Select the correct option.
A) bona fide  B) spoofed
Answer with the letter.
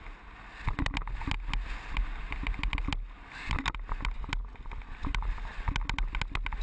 A